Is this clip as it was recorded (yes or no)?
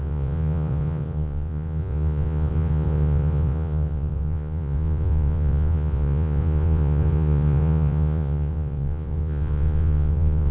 no